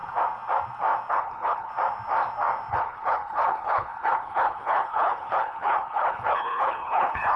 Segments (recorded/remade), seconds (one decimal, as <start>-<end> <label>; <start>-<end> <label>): 0.0-1.1 recorded; 1.1-1.7 remade; 1.7-2.7 recorded; 2.7-7.4 remade